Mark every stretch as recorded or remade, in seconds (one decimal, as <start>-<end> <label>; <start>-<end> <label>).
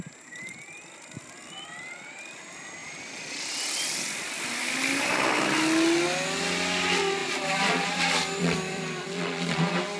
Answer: 0.0-2.8 recorded; 2.8-4.4 remade; 4.4-7.2 recorded; 7.2-9.6 remade; 9.6-10.0 recorded